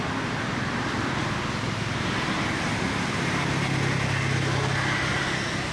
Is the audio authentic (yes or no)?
yes